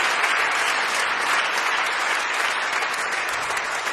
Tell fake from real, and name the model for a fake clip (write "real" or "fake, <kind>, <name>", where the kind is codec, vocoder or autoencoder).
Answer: fake, vocoder, Vocos